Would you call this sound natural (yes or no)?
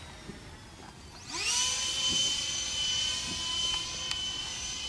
yes